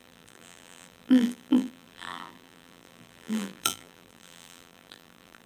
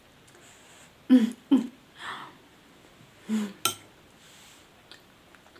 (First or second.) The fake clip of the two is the first